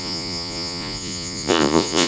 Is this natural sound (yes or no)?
no